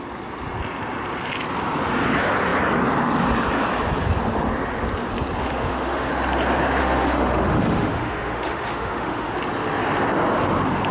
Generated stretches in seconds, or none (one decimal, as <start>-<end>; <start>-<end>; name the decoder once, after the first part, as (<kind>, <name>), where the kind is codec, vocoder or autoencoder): 5.4-6.1 (autoencoder, DAC-VAE); 6.8-9.3